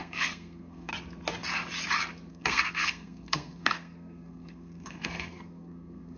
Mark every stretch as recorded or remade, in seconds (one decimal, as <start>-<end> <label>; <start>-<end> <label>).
0.0-0.9 remade; 0.9-2.3 recorded; 2.3-6.2 remade